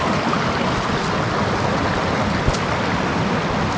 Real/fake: real